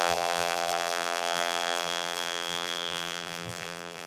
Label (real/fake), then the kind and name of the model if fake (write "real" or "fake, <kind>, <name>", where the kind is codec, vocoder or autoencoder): fake, vocoder, BigVGAN v2